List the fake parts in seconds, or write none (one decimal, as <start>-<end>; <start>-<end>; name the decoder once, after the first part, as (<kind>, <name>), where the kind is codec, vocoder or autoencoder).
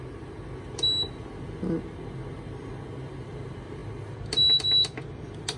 none